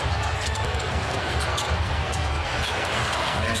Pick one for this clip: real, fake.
fake